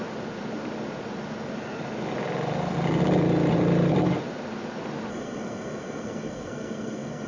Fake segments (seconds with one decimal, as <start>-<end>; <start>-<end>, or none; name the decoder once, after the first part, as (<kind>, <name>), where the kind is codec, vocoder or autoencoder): 5.1-7.3 (codec, SNAC)